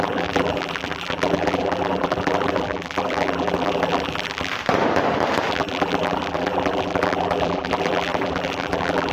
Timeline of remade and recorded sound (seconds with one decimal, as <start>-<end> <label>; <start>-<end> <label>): 0.0-4.5 remade; 4.5-5.5 recorded; 5.5-9.1 remade